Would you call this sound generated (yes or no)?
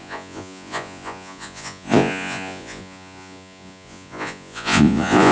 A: yes